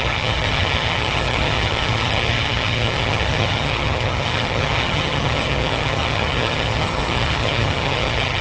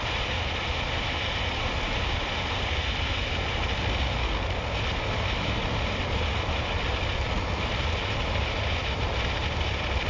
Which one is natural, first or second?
second